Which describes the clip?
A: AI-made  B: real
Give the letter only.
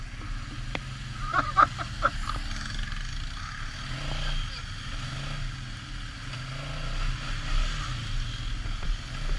B